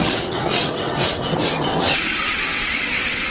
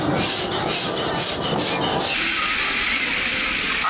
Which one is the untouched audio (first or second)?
second